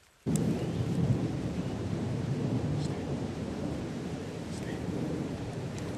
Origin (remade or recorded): remade